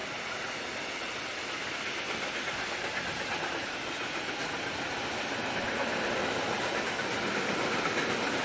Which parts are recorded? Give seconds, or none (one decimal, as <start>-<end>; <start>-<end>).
0.0-8.4